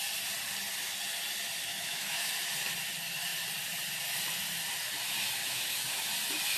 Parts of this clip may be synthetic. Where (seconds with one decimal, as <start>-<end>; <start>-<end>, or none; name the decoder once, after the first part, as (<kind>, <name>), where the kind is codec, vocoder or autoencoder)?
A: 1.7-2.3 (autoencoder, DAC-VAE); 5.4-6.1